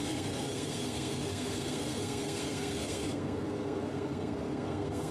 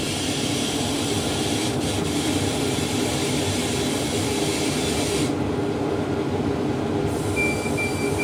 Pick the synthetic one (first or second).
first